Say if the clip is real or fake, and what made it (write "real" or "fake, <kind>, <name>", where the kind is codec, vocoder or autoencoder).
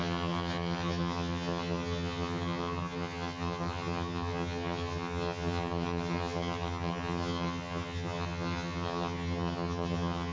fake, vocoder, HiFi-GAN